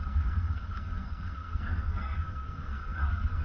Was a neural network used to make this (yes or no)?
yes